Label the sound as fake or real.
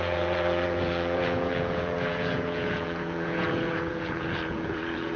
fake